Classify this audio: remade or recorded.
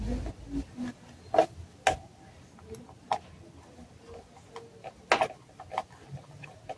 recorded